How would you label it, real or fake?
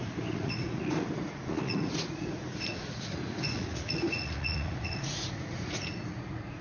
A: fake